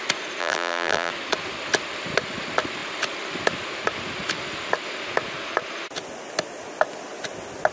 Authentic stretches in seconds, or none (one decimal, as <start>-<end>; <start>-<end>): 0.0-0.4; 1.1-7.7